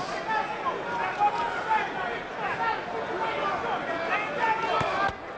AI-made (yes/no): no